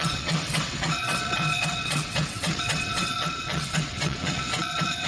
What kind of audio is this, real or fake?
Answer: fake